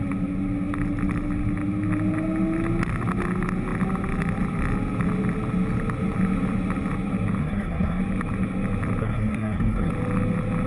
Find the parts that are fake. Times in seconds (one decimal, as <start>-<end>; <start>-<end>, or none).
7.4-8.0; 9.0-9.9

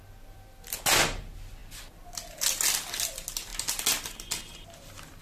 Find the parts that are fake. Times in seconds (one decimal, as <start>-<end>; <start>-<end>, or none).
none

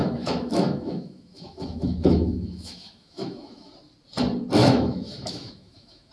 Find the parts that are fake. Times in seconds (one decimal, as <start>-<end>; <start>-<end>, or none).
0.0-3.7; 4.6-6.1

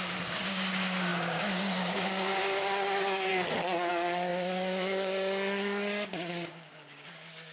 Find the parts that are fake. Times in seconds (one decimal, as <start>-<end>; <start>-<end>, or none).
0.0-3.3; 3.9-7.5

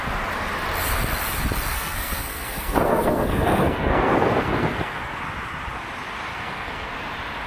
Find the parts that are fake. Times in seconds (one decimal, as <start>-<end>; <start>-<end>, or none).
1.7-5.2; 6.3-6.9

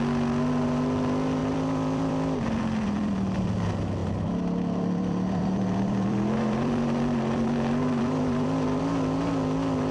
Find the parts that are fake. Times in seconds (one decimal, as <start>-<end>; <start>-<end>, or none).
1.4-3.5; 4.0-8.8